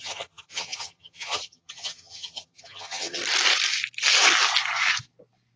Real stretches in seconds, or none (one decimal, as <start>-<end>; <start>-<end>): 3.2-5.6